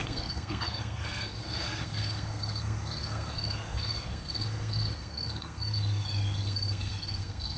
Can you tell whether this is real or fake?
fake